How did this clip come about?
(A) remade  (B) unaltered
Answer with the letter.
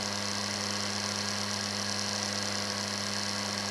B